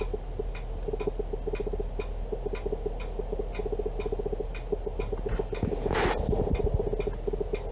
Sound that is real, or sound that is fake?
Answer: real